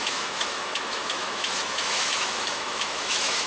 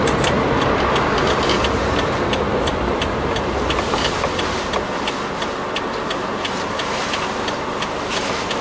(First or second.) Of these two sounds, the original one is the second